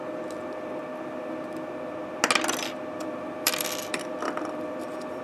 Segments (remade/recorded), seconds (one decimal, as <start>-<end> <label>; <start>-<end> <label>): 0.0-3.1 recorded; 3.1-5.2 remade